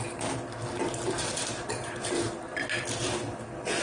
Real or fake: real